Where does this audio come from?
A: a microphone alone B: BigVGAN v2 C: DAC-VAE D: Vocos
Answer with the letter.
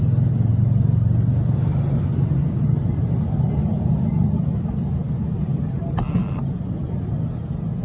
A